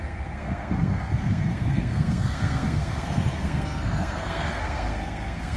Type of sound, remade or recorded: remade